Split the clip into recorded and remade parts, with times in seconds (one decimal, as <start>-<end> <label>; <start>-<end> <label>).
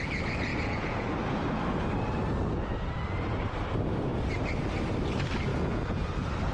0.0-0.5 recorded; 0.5-1.1 remade; 1.1-5.5 recorded; 5.5-6.1 remade; 6.1-6.5 recorded